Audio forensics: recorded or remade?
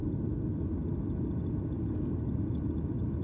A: recorded